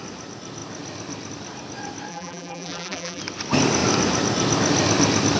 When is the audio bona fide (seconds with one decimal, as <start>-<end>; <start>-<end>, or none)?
0.0-2.1; 3.2-5.4